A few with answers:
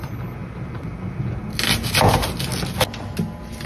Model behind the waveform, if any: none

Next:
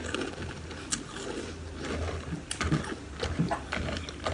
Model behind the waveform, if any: none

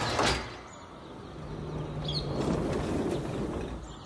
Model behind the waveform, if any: none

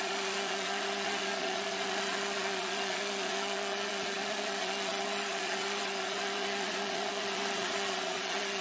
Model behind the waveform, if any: vocoder, Vocos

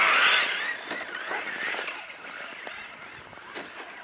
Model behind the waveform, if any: none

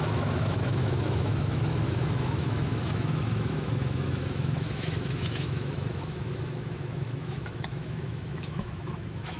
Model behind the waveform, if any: autoencoder, DAC-VAE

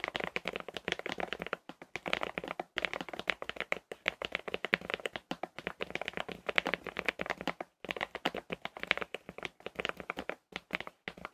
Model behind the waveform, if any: none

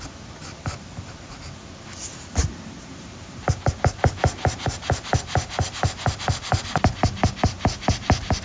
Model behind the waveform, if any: none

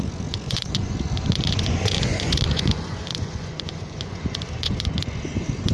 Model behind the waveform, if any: vocoder, Vocos